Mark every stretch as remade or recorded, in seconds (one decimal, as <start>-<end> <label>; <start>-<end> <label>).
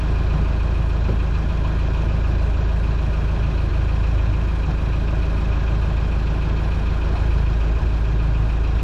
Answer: 0.0-8.8 recorded